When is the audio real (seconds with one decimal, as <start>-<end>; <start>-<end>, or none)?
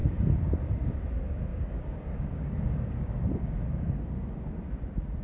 0.0-1.5; 4.6-5.2